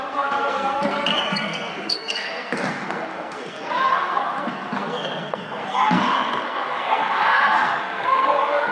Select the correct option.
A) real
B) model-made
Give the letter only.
B